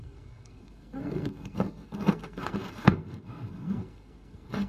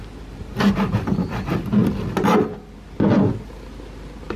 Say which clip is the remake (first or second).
first